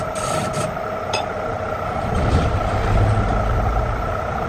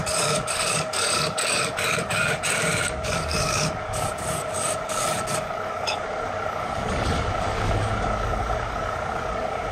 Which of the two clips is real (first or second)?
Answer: first